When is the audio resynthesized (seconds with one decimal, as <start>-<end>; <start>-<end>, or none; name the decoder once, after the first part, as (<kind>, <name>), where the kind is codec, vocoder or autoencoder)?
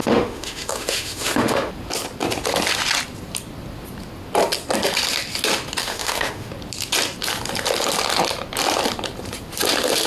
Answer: 0.0-1.7 (autoencoder, DAC-VAE); 5.8-6.5